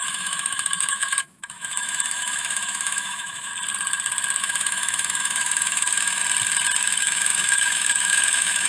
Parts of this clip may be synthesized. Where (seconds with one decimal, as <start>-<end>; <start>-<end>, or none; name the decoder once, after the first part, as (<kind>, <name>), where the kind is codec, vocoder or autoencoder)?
0.0-3.5 (autoencoder, DAC-VAE); 4.4-6.2; 6.8-8.7